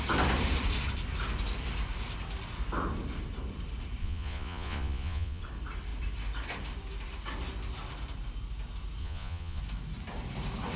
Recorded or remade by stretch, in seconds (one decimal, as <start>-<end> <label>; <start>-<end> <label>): 0.0-4.0 recorded; 4.0-5.4 remade; 5.4-9.0 recorded; 9.0-9.6 remade; 9.6-10.8 recorded